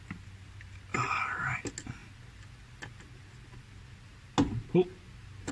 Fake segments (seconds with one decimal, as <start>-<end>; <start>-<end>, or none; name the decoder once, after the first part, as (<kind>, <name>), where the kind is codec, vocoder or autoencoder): none